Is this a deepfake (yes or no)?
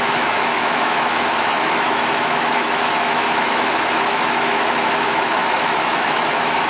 yes